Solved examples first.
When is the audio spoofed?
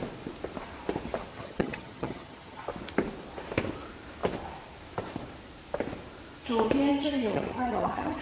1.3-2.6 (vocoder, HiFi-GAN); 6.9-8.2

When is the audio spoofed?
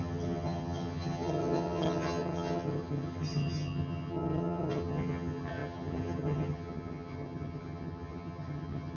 0.0-9.0 (vocoder, HiFi-GAN)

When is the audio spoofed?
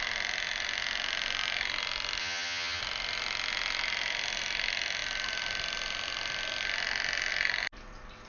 2.2-2.8 (vocoder, HiFi-GAN)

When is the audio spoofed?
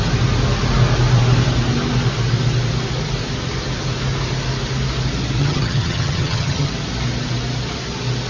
5.4-6.7 (vocoder, HiFi-GAN)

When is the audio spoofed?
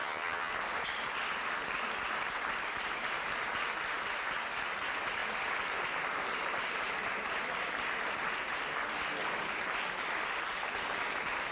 0.0-0.5 (vocoder, HiFi-GAN)